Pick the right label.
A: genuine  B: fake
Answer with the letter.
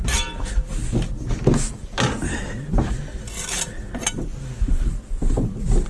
A